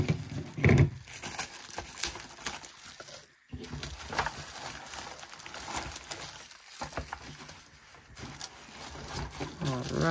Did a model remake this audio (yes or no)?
no